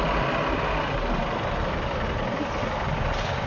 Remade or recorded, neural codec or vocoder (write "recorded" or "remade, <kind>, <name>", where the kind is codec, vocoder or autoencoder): recorded